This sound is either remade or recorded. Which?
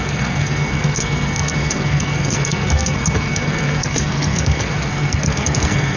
remade